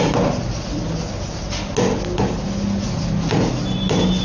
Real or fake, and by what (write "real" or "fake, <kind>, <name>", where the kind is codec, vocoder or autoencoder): real